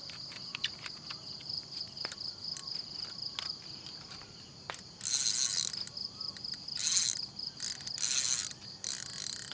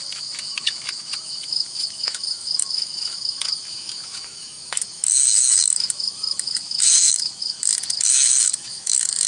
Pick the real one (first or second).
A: first